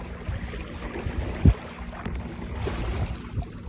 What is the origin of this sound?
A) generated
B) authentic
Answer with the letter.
B